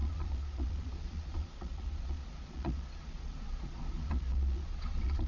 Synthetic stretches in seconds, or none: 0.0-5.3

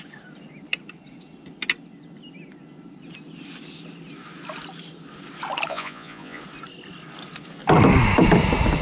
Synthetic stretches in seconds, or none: 5.7-6.4

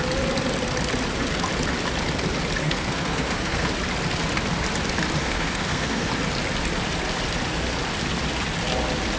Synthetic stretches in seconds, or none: 2.6-3.7; 5.2-6.1